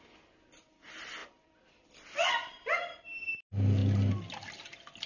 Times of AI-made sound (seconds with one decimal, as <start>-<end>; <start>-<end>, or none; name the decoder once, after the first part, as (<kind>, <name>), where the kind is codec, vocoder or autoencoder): 1.2-3.0 (vocoder, BigVGAN v2)